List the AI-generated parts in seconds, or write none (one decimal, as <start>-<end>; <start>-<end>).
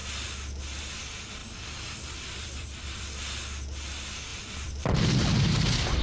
1.4-3.0; 4.3-5.3